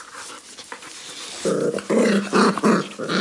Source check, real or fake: real